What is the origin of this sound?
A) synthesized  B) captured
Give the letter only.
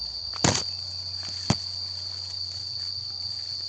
B